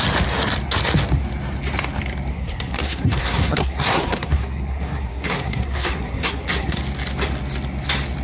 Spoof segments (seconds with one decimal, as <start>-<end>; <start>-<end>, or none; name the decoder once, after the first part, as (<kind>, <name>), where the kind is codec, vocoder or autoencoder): 2.3-6.8 (codec, SNAC)